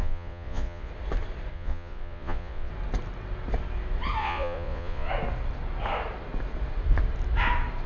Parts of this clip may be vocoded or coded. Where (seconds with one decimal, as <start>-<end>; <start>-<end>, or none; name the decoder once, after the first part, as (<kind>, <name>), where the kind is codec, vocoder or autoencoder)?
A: 0.0-0.9 (vocoder, Vocos); 1.5-2.7; 4.2-5.1

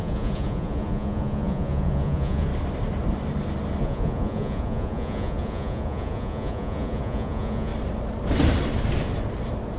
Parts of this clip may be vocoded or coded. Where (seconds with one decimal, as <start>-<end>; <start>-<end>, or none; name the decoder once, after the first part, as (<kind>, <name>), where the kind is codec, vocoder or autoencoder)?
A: 0.0-2.5 (vocoder, Vocos); 3.8-7.7

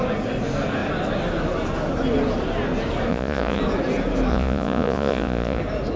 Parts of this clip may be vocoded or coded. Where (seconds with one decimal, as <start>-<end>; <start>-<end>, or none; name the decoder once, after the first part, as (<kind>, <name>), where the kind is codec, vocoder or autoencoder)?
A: 3.1-3.6 (vocoder, Vocos); 4.3-5.6

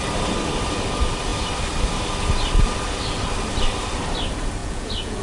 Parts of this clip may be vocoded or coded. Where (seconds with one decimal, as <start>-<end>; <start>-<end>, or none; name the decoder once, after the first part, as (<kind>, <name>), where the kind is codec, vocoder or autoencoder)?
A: 4.6-5.2 (vocoder, Vocos)